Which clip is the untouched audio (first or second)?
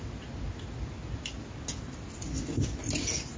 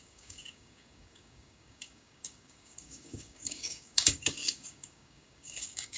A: first